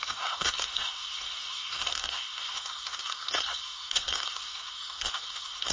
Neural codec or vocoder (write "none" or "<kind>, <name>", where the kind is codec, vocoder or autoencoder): codec, SNAC